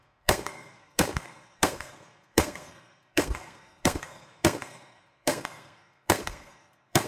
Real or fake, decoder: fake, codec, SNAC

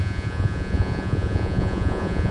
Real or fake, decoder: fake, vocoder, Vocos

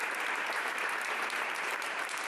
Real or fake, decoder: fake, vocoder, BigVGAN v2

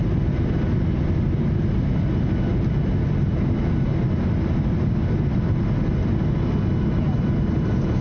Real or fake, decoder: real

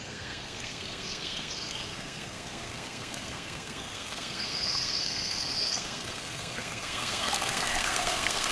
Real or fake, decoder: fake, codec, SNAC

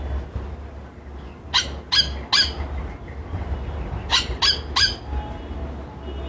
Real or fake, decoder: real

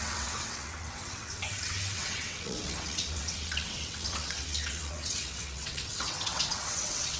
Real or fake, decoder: fake, vocoder, WaveNeXt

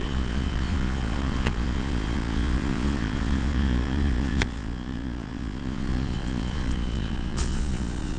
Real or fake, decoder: fake, vocoder, Vocos